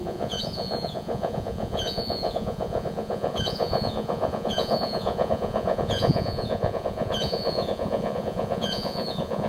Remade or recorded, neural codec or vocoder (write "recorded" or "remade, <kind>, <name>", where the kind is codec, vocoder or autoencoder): remade, vocoder, Vocos